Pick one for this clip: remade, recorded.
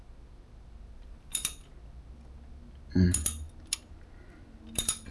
recorded